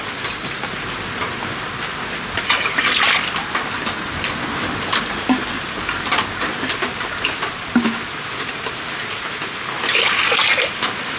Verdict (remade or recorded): recorded